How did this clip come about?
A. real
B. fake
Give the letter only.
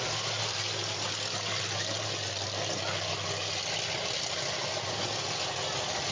A